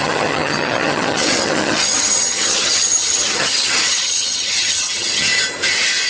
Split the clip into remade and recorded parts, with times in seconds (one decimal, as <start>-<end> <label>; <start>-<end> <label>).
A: 0.0-5.3 remade; 5.3-6.1 recorded